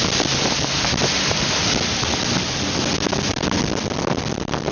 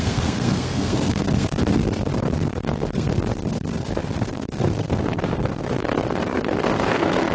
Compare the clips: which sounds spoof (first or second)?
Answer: second